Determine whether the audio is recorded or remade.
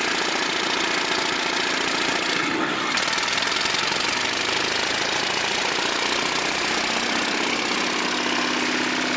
recorded